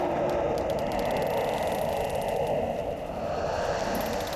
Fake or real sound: real